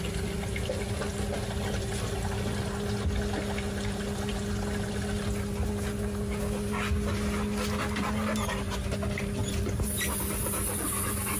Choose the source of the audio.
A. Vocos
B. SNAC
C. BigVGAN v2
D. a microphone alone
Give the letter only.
D